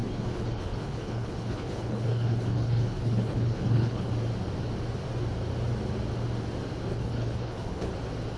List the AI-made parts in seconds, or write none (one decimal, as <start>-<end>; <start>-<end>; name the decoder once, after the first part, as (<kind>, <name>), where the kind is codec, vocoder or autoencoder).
0.0-4.1 (codec, HILCodec); 6.9-7.9

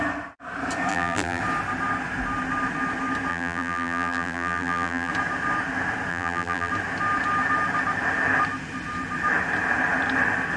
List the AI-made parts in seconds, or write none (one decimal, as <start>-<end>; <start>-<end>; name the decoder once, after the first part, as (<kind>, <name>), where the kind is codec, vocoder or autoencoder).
0.9-1.4 (vocoder, BigVGAN v2); 3.3-5.1; 6.1-6.7

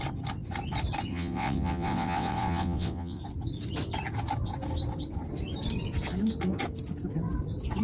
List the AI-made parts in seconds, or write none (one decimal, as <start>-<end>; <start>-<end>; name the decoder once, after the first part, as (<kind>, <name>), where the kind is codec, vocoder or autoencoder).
1.1-3.2 (vocoder, WaveNeXt)